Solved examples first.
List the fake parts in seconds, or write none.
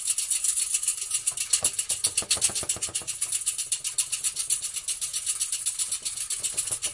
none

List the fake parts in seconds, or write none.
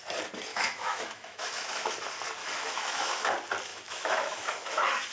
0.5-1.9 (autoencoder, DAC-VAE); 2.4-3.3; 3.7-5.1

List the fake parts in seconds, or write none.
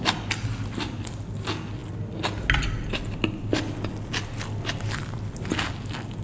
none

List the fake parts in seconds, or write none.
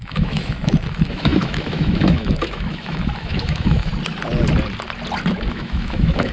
0.0-3.9 (autoencoder, DAC-VAE); 5.5-6.3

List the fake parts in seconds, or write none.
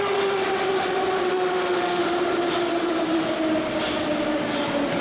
0.0-0.4 (autoencoder, DAC-VAE); 1.3-2.0